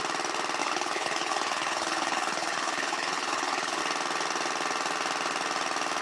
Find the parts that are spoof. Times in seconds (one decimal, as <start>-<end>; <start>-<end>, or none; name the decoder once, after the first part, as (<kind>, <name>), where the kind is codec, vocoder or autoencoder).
0.6-3.8 (codec, HILCodec)